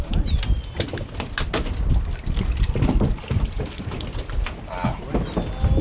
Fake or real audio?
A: real